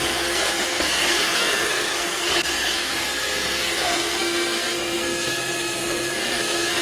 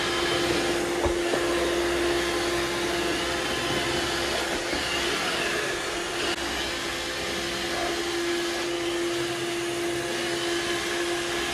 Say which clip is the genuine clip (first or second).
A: second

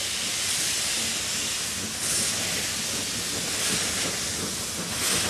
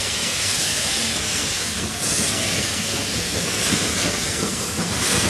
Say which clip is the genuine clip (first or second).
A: first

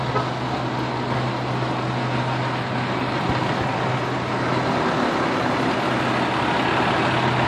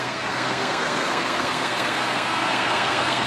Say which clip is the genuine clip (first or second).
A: first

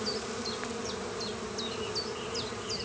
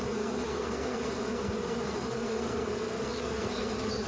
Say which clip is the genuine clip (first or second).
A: first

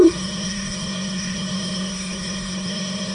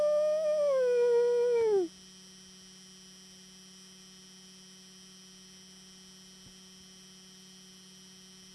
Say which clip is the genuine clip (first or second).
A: second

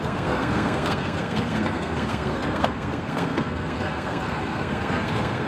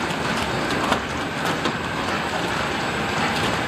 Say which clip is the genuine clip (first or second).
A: second